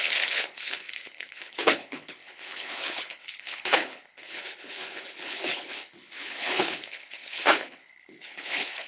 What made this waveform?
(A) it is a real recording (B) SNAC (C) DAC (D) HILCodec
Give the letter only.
D